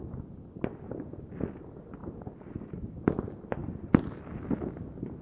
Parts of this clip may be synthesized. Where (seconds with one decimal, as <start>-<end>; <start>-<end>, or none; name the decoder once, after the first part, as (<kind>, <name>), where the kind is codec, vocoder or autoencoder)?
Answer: 3.6-4.2 (vocoder, BigVGAN v2)